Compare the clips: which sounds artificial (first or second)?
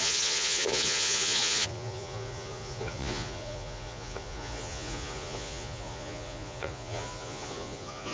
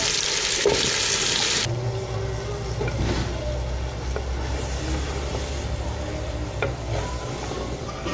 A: first